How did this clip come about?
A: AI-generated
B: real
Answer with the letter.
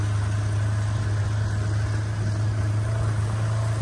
B